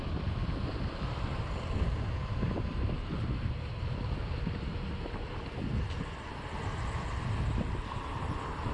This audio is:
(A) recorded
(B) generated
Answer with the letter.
A